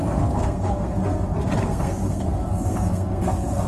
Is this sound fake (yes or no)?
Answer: yes